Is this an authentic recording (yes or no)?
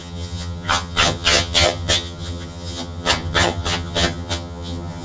no